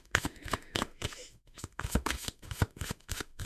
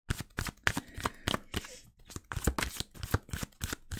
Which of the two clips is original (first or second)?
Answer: second